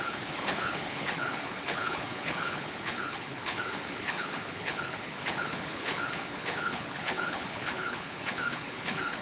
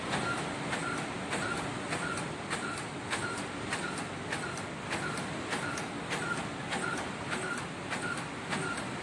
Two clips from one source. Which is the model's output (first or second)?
first